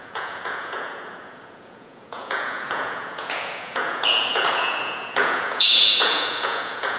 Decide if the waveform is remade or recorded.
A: remade